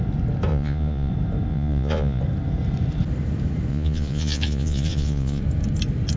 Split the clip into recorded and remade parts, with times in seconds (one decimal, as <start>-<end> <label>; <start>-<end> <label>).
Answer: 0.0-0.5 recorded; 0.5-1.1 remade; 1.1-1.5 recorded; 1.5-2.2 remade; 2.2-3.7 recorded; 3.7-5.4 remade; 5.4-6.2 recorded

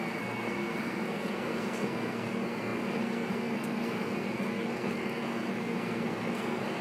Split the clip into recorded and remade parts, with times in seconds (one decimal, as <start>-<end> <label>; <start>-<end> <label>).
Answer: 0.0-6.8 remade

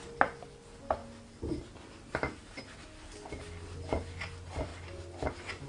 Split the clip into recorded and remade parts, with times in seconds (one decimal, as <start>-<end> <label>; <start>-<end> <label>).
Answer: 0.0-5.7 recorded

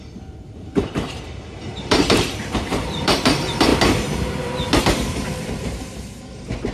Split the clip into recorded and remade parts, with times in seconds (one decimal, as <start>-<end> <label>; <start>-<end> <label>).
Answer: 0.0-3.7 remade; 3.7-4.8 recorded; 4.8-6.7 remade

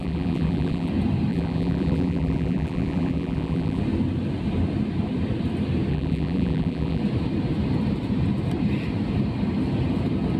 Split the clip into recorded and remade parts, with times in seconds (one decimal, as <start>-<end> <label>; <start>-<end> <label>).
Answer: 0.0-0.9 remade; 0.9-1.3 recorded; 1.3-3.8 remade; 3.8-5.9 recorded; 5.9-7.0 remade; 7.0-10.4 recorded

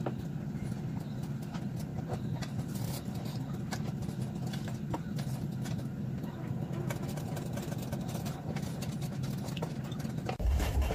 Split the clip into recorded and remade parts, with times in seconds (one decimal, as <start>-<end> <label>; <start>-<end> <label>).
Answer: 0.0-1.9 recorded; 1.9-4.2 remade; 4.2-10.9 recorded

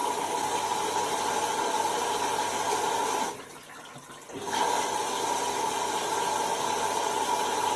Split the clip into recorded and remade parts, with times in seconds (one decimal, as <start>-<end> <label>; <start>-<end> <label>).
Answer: 0.0-7.8 recorded